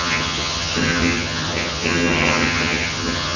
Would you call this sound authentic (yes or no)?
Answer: no